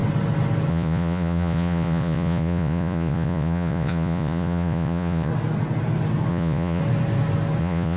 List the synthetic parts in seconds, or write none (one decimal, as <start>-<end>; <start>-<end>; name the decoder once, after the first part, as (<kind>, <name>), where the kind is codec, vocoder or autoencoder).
0.7-5.3 (vocoder, Vocos); 6.3-6.8; 7.6-8.0